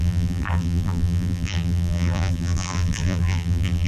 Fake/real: fake